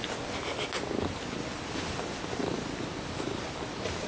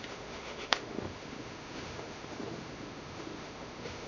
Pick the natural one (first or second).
first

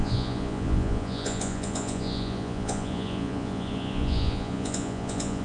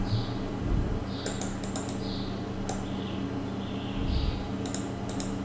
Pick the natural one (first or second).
second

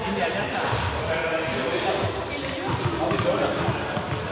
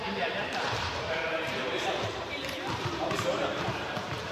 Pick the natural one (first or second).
first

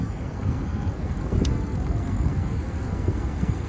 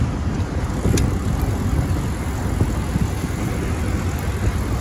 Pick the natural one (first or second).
second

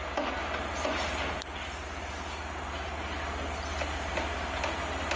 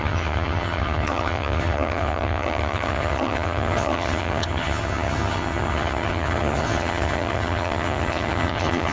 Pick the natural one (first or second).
first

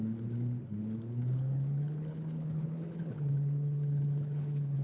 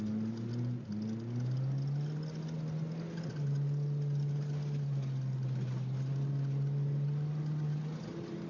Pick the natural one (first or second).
second